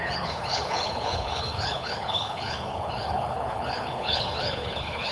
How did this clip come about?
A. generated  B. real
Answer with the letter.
A